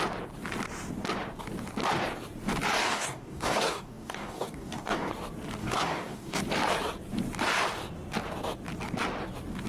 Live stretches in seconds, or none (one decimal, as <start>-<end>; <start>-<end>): 0.0-2.8; 5.1-5.6; 6.4-9.7

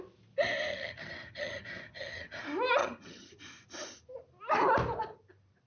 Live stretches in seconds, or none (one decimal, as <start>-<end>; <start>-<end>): 0.0-0.7; 2.4-2.8; 3.3-5.7

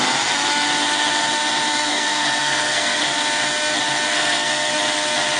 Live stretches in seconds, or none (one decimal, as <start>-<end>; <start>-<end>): 0.0-1.7; 3.0-4.1; 4.7-5.4

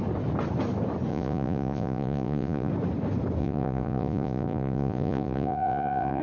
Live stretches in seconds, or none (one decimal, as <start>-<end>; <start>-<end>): 0.0-1.1; 2.7-3.4